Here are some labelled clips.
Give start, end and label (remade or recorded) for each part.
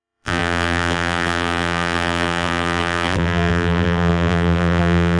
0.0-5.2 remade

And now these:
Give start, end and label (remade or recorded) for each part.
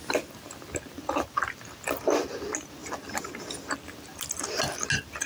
0.0-5.3 recorded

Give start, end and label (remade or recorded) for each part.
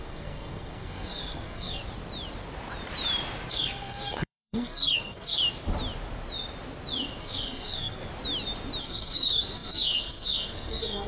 0.0-1.8 remade; 1.8-3.5 recorded; 3.5-5.4 remade; 5.4-7.2 recorded; 7.2-8.0 remade; 8.0-8.8 recorded; 8.8-11.1 remade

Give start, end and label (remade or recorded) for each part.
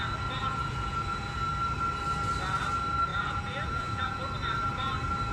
0.0-0.4 recorded; 0.4-1.5 remade; 1.5-3.1 recorded; 3.1-4.2 remade; 4.2-5.3 recorded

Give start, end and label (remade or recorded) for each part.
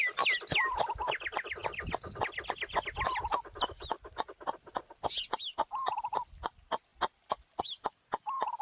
0.0-8.6 recorded